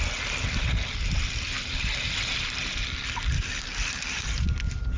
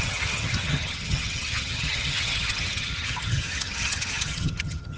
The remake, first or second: second